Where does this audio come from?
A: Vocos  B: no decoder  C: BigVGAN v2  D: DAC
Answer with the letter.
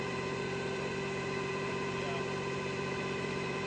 C